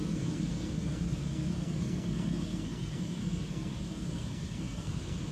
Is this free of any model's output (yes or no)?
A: no